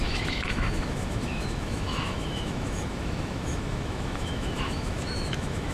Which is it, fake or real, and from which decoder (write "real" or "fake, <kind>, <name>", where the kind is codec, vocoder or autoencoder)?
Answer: fake, autoencoder, DAC-VAE